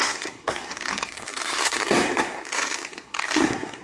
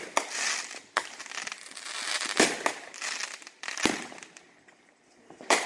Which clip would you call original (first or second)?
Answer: second